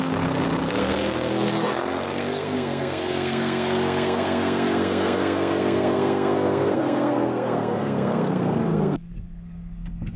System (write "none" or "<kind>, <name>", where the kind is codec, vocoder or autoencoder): codec, SNAC